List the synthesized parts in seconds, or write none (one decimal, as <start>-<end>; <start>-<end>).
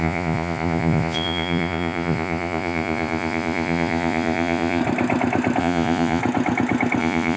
0.0-4.8; 5.6-6.2; 7.0-7.4